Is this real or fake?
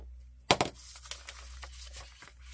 real